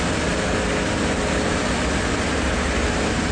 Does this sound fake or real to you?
real